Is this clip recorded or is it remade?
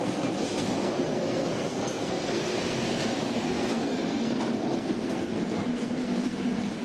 remade